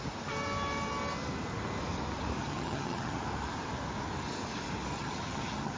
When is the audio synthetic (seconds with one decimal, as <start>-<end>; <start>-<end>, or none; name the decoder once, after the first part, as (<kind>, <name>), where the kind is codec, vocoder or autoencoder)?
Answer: 2.4-3.2 (vocoder, HiFi-GAN); 4.9-5.8